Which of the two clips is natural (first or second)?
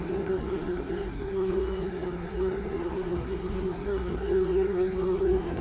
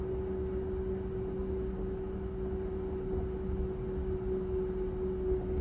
second